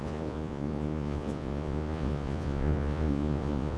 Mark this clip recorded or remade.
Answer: remade